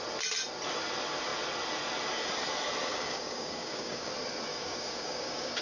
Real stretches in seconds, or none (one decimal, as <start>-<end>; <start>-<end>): 0.0-2.9; 4.1-4.5